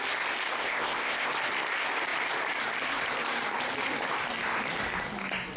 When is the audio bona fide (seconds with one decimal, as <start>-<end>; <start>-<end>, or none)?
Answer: 0.0-0.6; 1.3-5.6